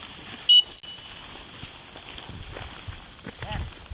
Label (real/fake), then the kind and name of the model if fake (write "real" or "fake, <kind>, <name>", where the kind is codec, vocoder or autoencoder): real